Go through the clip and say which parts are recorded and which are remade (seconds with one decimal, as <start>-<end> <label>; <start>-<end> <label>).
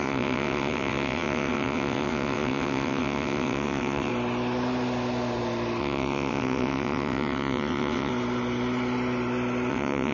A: 0.0-4.1 remade; 4.1-5.8 recorded; 5.8-8.1 remade; 8.1-9.7 recorded; 9.7-10.1 remade